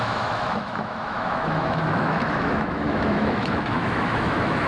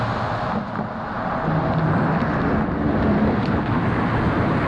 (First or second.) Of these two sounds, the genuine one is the second